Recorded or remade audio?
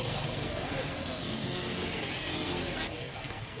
remade